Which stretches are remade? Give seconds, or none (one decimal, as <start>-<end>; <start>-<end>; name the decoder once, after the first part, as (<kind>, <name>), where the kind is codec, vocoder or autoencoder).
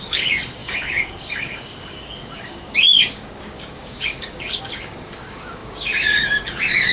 0.0-6.9 (codec, DAC)